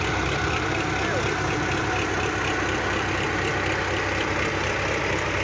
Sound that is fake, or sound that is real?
real